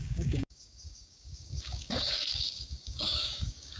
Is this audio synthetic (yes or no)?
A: yes